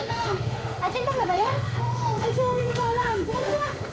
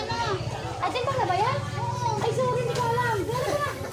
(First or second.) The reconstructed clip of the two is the first